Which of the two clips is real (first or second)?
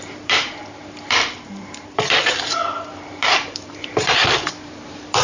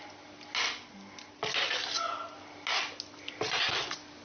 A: second